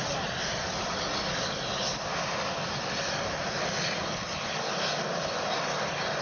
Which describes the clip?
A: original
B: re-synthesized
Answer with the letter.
A